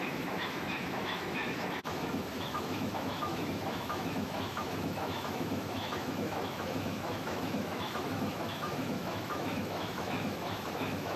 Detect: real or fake fake